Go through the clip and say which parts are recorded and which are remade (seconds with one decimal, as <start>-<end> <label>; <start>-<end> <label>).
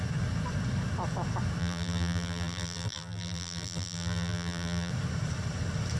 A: 0.0-1.6 recorded; 1.6-4.9 remade; 4.9-6.0 recorded